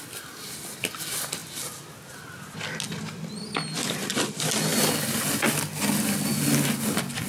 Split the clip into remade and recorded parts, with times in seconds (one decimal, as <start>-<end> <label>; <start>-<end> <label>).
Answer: 0.0-7.3 recorded